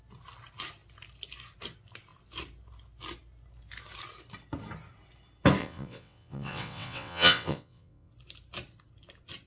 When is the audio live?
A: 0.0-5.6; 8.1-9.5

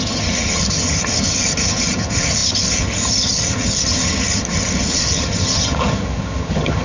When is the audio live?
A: none

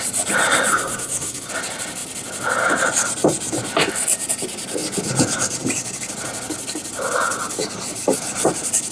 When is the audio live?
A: 0.0-0.7; 1.5-8.9

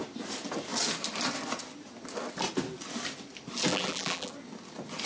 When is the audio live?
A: 0.0-3.7; 4.3-5.1

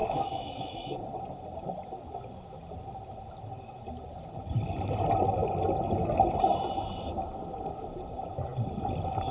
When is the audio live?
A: 1.0-9.3